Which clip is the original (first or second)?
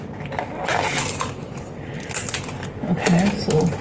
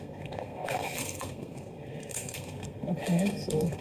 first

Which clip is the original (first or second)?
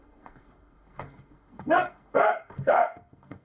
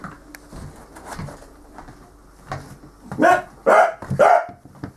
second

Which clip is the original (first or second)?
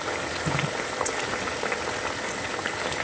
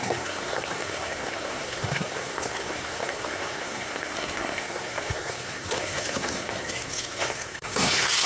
first